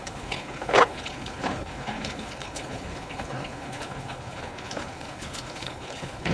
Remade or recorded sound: remade